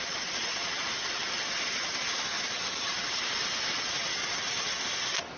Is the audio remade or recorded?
recorded